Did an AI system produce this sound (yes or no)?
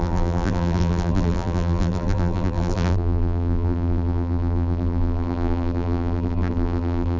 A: yes